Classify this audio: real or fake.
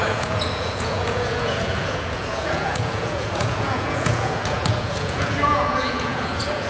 fake